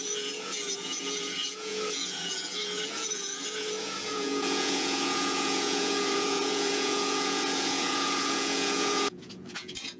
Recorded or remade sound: remade